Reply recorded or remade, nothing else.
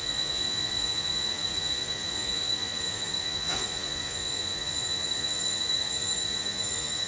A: remade